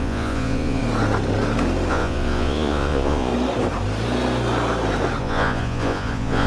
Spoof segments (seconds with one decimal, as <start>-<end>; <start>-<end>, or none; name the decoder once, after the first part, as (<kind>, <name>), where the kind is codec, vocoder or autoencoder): 0.0-0.8 (vocoder, Vocos); 1.9-3.3; 5.2-6.5